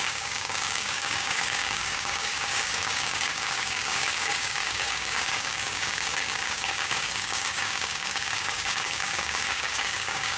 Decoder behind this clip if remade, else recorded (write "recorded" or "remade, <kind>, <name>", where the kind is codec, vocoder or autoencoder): remade, codec, DAC